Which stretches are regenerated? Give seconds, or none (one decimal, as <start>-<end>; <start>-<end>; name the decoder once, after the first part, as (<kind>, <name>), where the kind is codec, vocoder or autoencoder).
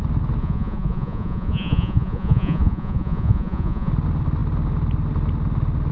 0.4-3.9 (vocoder, Vocos)